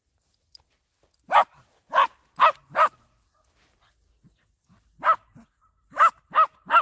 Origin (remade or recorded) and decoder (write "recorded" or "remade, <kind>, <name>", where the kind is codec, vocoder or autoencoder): recorded